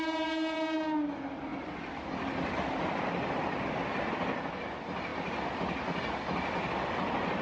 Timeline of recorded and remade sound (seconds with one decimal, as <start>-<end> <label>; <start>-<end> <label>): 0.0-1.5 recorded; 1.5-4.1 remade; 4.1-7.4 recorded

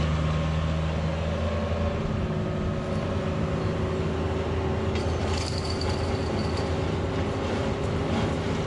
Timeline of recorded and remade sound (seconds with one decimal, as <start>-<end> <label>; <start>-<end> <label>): 0.0-8.7 recorded

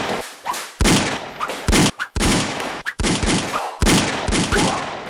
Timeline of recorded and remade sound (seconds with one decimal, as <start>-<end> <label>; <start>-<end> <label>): 0.0-1.8 recorded; 1.8-3.2 remade; 3.2-5.1 recorded